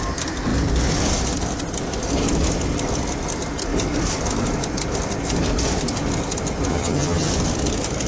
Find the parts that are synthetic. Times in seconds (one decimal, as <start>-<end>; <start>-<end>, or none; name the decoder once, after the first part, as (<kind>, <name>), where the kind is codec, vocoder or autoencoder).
6.7-7.3 (vocoder, HiFi-GAN)